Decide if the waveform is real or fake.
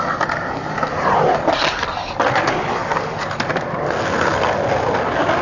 real